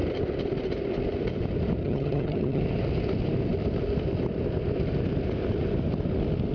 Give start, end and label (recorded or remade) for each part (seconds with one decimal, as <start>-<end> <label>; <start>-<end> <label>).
0.0-1.8 recorded; 1.8-2.6 remade; 2.6-6.5 recorded

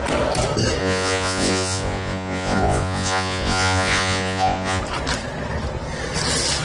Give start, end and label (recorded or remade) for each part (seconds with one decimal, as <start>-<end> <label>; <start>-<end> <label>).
0.0-0.8 recorded; 0.8-4.8 remade; 4.8-6.6 recorded

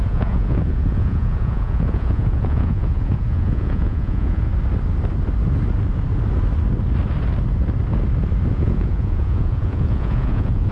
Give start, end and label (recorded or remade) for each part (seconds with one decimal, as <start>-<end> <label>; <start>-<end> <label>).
0.0-4.5 remade; 4.5-8.5 recorded; 8.5-10.7 remade

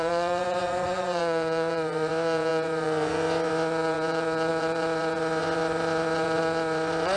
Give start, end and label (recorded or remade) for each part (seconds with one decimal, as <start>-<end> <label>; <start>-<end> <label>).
0.0-7.2 remade

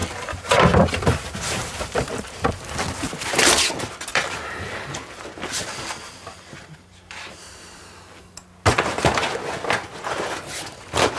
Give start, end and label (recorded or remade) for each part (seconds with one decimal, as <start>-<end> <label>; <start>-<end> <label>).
0.0-2.5 remade; 2.5-4.1 recorded; 4.1-5.2 remade; 5.2-11.2 recorded

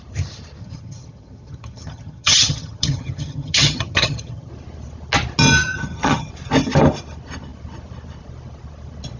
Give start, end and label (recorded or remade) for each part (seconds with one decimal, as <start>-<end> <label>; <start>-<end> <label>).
0.0-0.6 recorded; 0.6-4.5 remade; 4.5-5.6 recorded; 5.6-6.3 remade; 6.3-9.2 recorded